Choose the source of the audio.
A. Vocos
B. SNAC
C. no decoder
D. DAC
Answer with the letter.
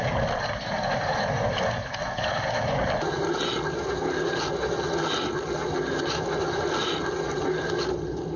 C